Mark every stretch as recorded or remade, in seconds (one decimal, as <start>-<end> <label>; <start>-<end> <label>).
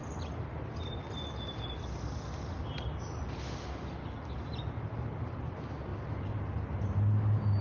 0.0-7.6 recorded